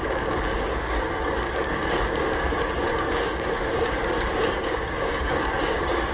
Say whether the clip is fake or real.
fake